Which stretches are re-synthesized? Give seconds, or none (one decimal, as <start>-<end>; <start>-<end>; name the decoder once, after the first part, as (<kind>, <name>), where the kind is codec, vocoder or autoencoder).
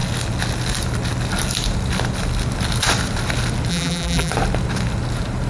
3.7-4.3 (vocoder, BigVGAN v2)